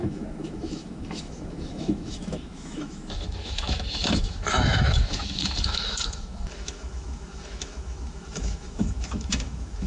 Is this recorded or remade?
remade